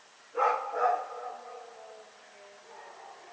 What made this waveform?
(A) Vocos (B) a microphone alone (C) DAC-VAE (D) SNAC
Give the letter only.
B